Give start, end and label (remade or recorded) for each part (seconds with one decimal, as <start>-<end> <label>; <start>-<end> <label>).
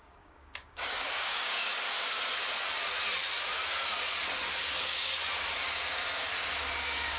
0.0-1.7 remade; 1.7-4.6 recorded; 4.6-5.2 remade; 5.2-6.8 recorded; 6.8-7.2 remade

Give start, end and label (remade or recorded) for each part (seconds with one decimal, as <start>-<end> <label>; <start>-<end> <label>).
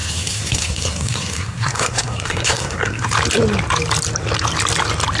0.0-3.1 remade; 3.1-5.2 recorded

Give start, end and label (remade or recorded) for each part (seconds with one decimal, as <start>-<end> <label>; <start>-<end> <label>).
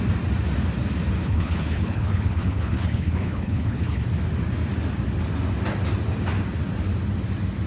0.0-1.2 recorded; 1.2-4.0 remade; 4.0-7.7 recorded